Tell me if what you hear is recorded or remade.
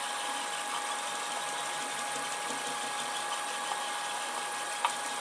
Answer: recorded